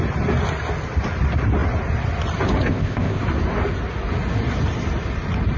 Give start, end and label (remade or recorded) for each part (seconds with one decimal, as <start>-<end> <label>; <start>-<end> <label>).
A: 0.0-2.7 recorded; 2.7-3.2 remade; 3.2-5.6 recorded